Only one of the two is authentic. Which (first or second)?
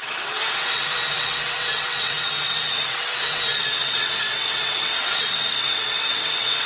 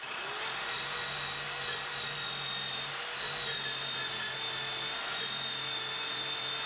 second